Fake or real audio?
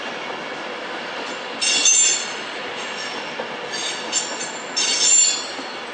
real